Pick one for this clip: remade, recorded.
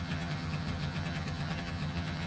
remade